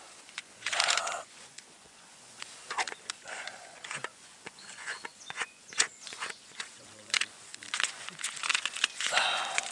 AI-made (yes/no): yes